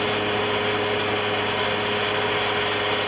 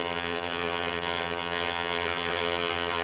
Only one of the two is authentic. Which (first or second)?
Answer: first